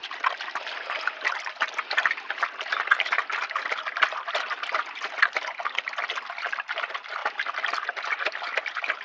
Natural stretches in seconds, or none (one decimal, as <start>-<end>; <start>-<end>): 0.0-9.0